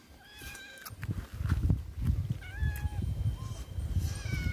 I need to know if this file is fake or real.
real